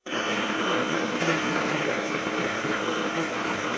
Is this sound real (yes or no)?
no